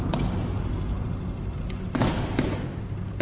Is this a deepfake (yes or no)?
no